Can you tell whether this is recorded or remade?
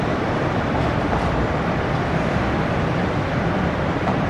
remade